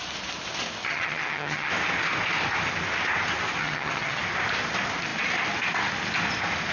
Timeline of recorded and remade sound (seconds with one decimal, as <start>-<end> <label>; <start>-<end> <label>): 0.0-0.8 recorded; 0.8-1.7 remade; 1.7-3.6 recorded; 3.6-4.2 remade; 4.2-6.7 recorded